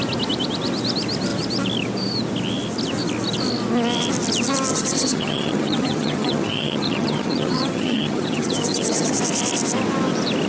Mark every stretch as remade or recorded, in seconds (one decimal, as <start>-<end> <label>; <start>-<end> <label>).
0.0-4.7 recorded; 4.7-9.2 remade; 9.2-10.5 recorded